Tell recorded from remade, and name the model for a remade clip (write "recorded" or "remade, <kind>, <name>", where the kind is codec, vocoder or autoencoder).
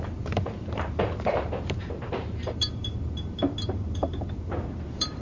remade, vocoder, BigVGAN v2